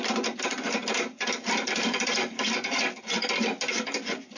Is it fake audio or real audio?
real